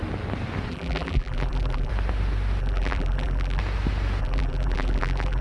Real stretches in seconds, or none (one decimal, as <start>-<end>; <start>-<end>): 0.0-0.7; 1.9-2.6; 3.6-4.2